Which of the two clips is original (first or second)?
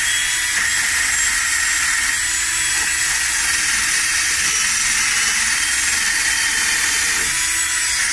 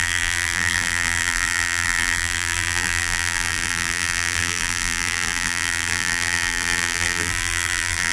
first